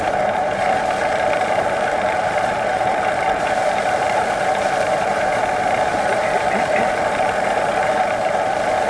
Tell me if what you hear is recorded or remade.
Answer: remade